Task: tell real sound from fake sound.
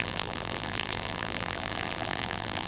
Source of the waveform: fake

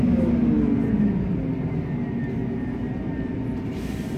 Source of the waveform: real